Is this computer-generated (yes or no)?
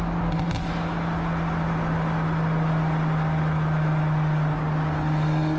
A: no